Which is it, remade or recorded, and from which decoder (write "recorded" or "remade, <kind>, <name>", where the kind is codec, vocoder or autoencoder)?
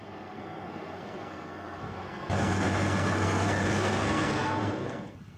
remade, codec, SNAC